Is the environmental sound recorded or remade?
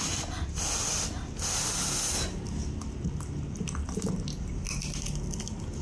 recorded